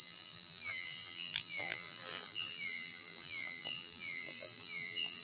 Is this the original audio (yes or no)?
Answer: no